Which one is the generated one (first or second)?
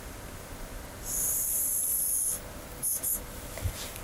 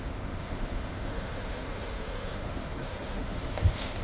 second